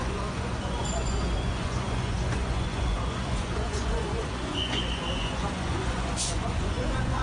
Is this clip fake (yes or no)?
yes